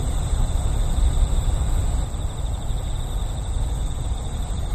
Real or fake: real